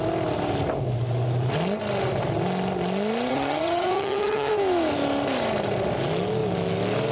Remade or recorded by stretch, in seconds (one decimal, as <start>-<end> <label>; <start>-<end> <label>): 0.0-3.3 recorded; 3.3-4.5 remade; 4.5-7.1 recorded